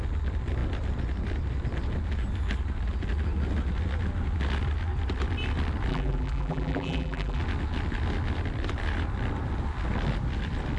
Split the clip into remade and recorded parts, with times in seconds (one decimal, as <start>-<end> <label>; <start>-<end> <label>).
0.0-5.9 recorded; 5.9-7.4 remade; 7.4-10.8 recorded